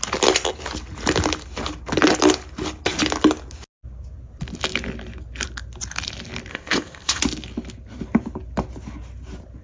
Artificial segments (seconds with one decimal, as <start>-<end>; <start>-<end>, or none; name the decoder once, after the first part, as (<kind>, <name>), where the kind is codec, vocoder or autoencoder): 6.5-7.2 (codec, ZipCodec)